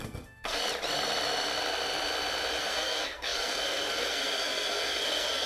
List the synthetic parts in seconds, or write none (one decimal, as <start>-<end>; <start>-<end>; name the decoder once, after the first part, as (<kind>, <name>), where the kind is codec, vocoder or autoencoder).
0.0-0.6 (codec, SNAC); 2.6-5.5